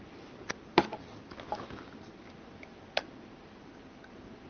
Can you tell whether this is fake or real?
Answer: real